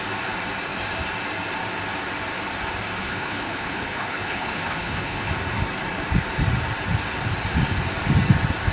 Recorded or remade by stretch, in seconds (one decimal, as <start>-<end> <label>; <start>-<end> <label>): 0.0-3.0 recorded; 3.0-5.3 remade; 5.3-8.7 recorded